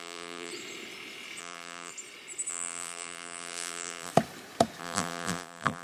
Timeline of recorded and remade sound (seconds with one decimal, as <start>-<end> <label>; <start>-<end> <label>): 0.0-0.5 remade; 0.5-1.4 recorded; 1.4-1.9 remade; 1.9-2.5 recorded; 2.5-4.1 remade; 4.1-4.8 recorded; 4.8-5.8 remade